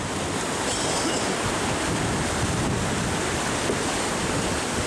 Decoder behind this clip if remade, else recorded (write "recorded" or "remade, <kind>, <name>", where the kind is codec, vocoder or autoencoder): recorded